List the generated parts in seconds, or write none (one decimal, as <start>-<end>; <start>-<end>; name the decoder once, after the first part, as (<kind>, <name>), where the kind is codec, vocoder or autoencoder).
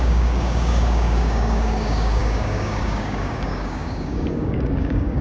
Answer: 0.0-5.2 (codec, DAC)